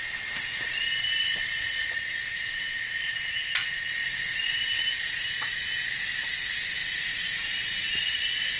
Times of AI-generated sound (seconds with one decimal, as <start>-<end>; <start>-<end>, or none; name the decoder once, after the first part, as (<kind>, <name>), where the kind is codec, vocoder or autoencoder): 1.3-3.1 (vocoder, Vocos); 6.8-7.5